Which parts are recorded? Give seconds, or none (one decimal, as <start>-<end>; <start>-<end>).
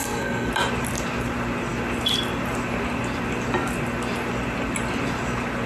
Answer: 0.5-5.7